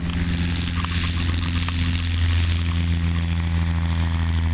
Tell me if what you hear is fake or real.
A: real